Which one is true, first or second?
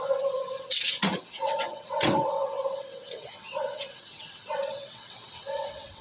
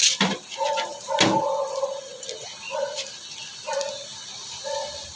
second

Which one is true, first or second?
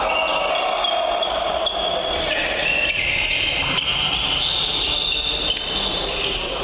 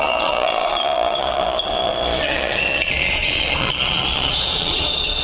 first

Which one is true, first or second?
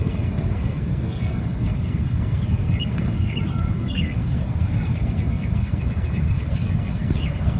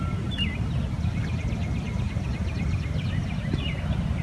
second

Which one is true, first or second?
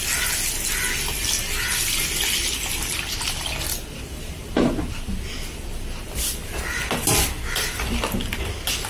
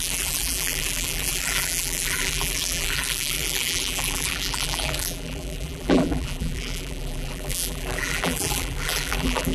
first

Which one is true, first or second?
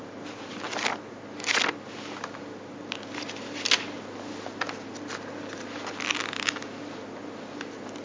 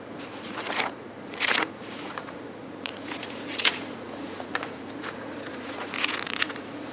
first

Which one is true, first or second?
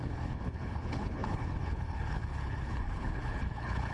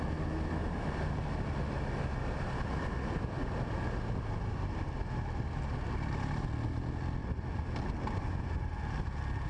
second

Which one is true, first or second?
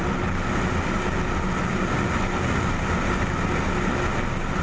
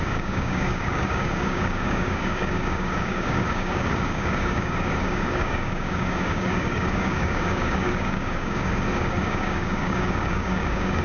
first